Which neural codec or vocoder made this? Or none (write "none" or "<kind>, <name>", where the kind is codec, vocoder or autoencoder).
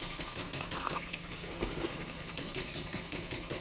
codec, SNAC